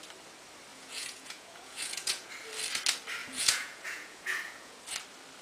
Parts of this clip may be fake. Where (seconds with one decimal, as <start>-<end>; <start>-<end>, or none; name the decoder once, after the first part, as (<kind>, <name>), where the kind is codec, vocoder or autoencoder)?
0.7-2.3 (vocoder, Vocos); 3.2-4.8